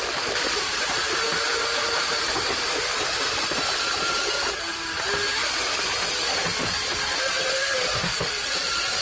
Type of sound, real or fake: real